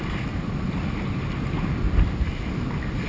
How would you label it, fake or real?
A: real